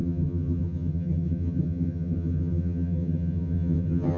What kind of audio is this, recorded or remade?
remade